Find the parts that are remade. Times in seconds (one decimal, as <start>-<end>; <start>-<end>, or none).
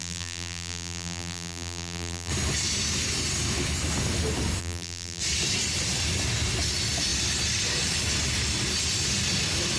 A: 0.0-2.3; 4.6-5.2